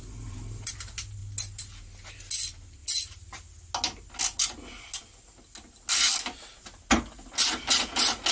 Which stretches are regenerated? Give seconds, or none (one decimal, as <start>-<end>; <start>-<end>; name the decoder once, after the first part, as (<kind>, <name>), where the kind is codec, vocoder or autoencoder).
0.0-0.7 (vocoder, BigVGAN v2)